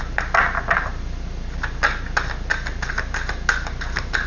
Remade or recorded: recorded